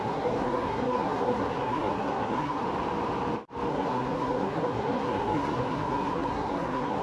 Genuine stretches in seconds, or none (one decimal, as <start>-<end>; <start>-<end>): 2.6-3.7